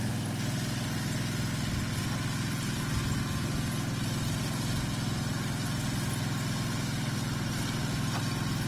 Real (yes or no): yes